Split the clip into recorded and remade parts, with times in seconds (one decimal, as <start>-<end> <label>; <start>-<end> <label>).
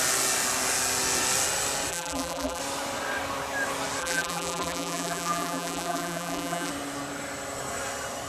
0.0-1.9 recorded; 1.9-2.6 remade; 2.6-4.0 recorded; 4.0-6.7 remade; 6.7-8.3 recorded